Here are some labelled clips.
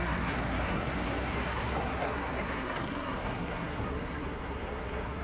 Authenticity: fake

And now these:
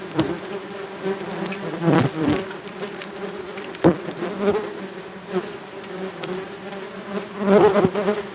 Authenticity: fake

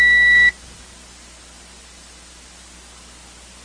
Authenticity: real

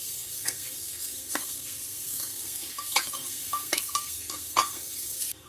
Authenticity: fake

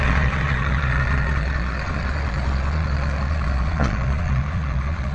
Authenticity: fake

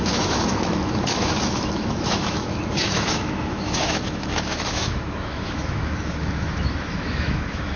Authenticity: fake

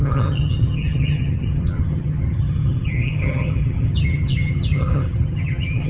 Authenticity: fake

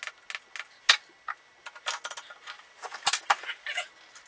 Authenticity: real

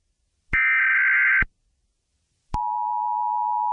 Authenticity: real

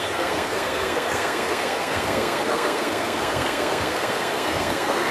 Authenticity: fake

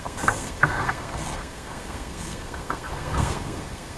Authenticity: fake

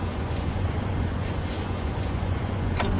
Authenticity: fake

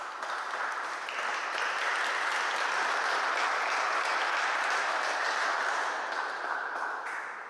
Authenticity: real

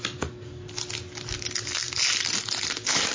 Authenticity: real